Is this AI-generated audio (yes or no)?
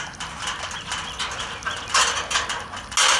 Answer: no